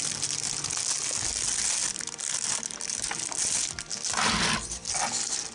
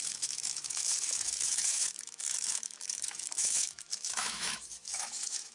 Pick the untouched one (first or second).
first